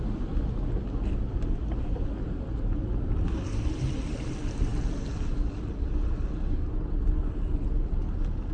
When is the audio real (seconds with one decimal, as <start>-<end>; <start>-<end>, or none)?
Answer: 0.0-8.5